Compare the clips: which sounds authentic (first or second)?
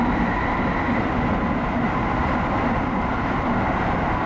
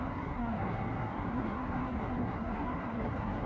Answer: first